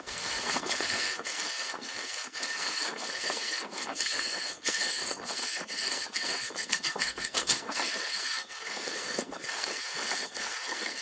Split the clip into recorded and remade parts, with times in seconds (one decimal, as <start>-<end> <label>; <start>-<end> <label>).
0.0-11.0 remade